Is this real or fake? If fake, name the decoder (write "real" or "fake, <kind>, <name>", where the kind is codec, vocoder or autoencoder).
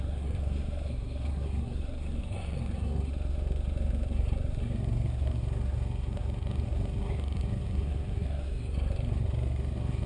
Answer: fake, codec, SNAC